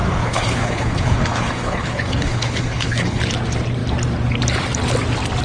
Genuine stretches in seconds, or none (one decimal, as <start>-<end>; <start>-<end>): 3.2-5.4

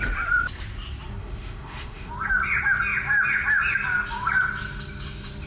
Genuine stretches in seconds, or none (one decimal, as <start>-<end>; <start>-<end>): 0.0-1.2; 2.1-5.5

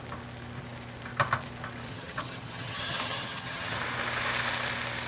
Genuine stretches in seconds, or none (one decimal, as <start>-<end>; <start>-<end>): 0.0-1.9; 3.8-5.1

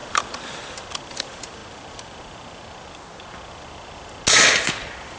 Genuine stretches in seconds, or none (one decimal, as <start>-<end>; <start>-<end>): 1.6-4.7

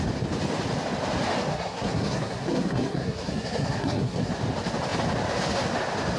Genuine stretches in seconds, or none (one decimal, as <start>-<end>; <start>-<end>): 0.0-1.5; 4.3-6.2

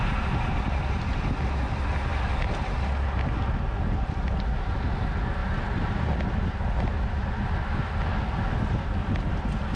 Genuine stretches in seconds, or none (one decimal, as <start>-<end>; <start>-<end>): 0.0-9.8

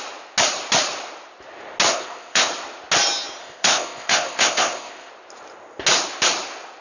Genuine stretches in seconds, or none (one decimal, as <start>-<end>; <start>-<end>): 0.0-1.9; 2.5-3.4; 5.1-6.8